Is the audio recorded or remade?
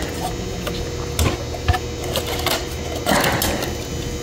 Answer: recorded